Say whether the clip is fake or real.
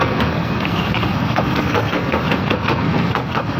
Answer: fake